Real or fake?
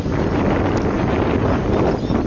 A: real